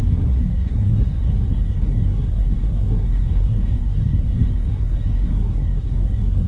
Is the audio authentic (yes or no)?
no